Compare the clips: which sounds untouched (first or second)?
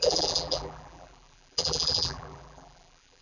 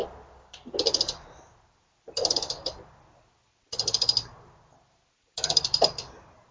second